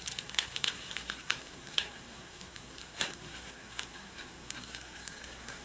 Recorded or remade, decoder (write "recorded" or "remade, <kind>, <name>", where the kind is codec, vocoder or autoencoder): remade, codec, SNAC